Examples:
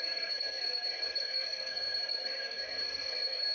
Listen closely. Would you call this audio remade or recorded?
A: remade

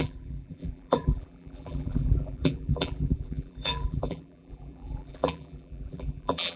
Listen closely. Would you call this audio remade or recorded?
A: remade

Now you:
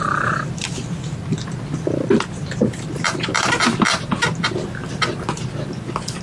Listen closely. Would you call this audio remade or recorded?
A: recorded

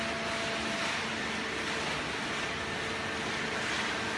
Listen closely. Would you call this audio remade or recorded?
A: recorded